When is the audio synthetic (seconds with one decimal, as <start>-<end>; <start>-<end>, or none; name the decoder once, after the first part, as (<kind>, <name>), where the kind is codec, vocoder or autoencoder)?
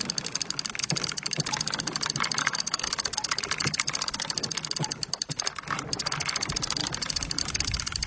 2.4-2.9 (codec, SNAC)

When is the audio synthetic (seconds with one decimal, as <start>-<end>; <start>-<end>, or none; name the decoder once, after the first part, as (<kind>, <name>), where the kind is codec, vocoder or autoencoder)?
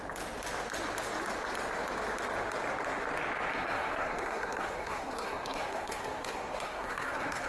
3.5-7.5 (codec, SNAC)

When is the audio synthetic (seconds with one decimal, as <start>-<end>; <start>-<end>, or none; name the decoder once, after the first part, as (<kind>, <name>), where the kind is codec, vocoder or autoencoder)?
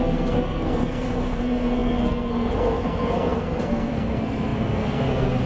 0.0-5.5 (codec, SNAC)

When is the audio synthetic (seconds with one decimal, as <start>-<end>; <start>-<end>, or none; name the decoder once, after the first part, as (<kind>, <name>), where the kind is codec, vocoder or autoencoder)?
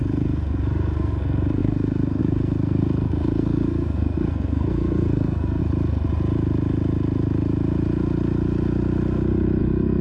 0.0-5.6 (codec, SNAC); 9.6-10.0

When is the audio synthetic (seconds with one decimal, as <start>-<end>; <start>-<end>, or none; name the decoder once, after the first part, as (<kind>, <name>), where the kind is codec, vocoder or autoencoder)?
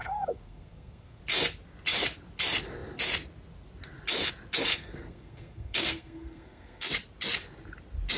0.0-1.2 (codec, SNAC); 4.7-6.9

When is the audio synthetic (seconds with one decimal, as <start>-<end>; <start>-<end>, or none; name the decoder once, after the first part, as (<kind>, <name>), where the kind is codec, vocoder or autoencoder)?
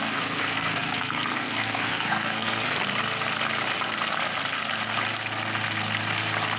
0.0-2.8 (codec, SNAC)